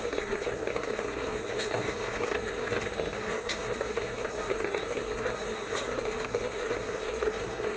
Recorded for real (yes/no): no